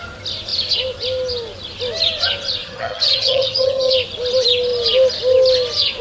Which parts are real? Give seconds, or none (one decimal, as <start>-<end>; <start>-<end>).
0.0-2.6; 3.9-6.0